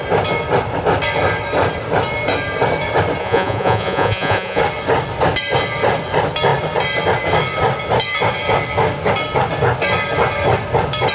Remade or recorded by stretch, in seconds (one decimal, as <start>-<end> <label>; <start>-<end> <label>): 0.0-3.2 recorded; 3.2-4.6 remade; 4.6-11.1 recorded